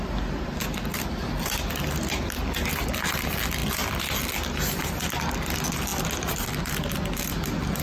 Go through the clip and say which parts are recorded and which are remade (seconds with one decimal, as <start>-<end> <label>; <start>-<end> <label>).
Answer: 0.0-5.9 recorded; 5.9-6.5 remade; 6.5-7.8 recorded

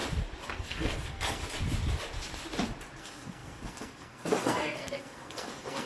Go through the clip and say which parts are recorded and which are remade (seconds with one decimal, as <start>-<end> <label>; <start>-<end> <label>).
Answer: 0.0-0.5 recorded; 0.5-1.4 remade; 1.4-3.0 recorded; 3.0-5.9 remade

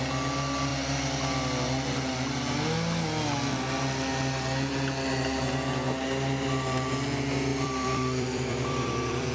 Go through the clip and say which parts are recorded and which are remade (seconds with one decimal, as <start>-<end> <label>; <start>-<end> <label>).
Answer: 0.0-7.5 recorded; 7.5-9.3 remade

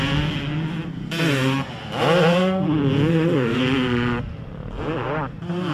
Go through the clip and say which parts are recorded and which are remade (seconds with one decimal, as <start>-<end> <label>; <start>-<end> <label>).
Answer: 0.0-3.1 recorded; 3.1-3.6 remade; 3.6-5.7 recorded

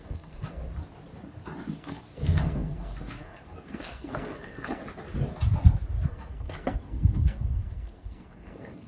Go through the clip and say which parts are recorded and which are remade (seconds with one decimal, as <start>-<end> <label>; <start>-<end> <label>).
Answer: 0.0-0.6 remade; 0.6-1.7 recorded; 1.7-4.8 remade; 4.8-6.1 recorded; 6.1-8.9 remade

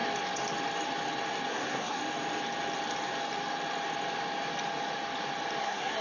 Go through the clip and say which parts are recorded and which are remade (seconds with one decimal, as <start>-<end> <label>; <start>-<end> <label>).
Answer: 0.0-1.5 recorded; 1.5-2.0 remade; 2.0-5.6 recorded; 5.6-6.0 remade